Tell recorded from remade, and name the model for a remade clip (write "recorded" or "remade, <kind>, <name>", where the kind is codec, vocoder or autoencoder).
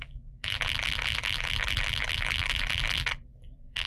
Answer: remade, vocoder, BigVGAN v2